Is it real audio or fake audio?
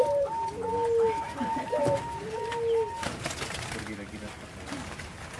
real